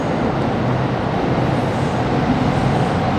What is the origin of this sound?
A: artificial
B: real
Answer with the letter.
B